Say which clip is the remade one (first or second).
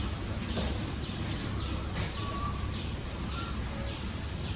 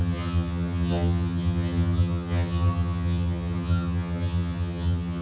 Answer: second